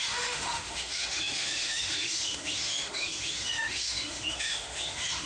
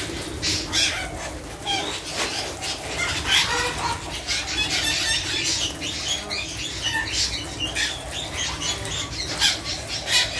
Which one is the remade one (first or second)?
first